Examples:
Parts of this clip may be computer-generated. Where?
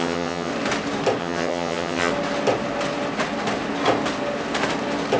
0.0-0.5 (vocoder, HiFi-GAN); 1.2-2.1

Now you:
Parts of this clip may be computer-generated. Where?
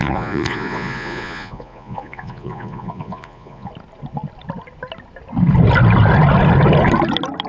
0.0-3.7 (vocoder, Vocos)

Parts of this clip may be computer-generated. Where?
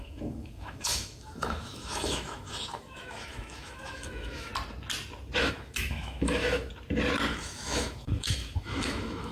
0.0-4.5 (autoencoder, DAC-VAE); 5.4-6.7; 7.3-9.3